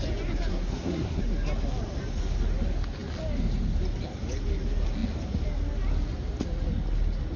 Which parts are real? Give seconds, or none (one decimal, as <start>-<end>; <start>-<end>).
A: 0.0-0.5; 1.2-7.4